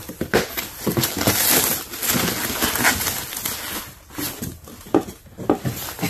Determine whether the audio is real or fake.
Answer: real